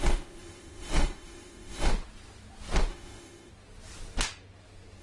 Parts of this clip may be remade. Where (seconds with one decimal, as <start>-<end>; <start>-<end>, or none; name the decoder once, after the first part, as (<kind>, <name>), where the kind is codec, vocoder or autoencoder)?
0.0-1.9 (autoencoder, DAC-VAE); 2.9-3.5